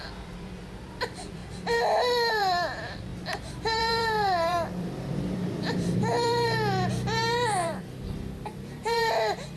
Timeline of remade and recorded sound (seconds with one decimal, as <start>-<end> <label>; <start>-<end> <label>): 0.0-1.4 remade; 1.4-2.3 recorded; 2.3-9.6 remade